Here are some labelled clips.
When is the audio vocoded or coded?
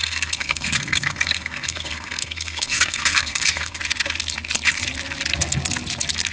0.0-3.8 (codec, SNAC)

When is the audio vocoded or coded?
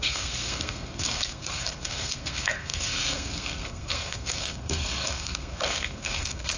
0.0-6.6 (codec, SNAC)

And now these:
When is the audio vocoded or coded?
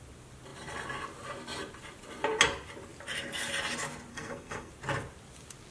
4.1-4.7 (codec, SNAC)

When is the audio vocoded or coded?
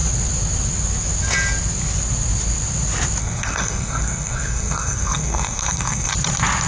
3.2-6.1 (codec, SNAC)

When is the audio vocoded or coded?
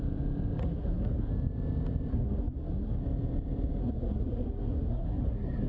0.6-1.3 (codec, SNAC); 2.1-3.0; 3.8-5.7